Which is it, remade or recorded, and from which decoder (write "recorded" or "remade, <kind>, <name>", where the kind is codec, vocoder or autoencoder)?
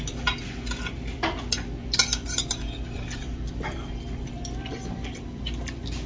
recorded